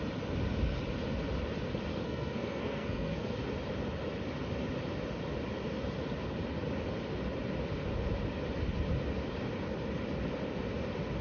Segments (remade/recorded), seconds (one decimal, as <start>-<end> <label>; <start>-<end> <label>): 0.0-1.9 recorded; 1.9-3.4 remade; 3.4-11.2 recorded